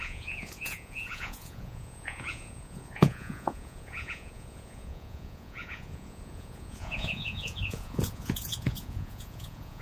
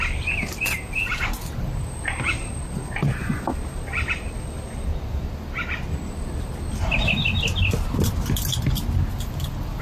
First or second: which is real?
second